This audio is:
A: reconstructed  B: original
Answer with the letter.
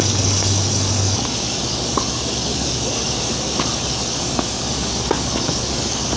A